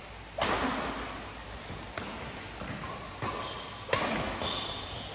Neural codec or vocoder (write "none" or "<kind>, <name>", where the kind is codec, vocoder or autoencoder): none